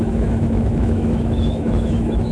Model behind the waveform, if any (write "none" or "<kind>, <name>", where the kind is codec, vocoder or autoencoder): autoencoder, DAC-VAE